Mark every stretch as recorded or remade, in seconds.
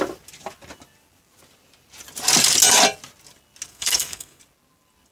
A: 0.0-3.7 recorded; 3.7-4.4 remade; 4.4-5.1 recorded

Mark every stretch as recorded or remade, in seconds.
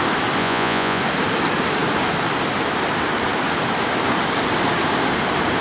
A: 0.0-0.4 recorded; 0.4-1.0 remade; 1.0-5.6 recorded